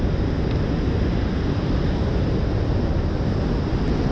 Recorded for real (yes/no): yes